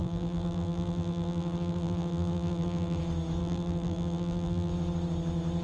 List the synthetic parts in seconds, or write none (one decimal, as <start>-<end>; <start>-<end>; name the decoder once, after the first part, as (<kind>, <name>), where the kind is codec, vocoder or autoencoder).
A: 0.0-3.0 (vocoder, BigVGAN v2); 3.4-4.7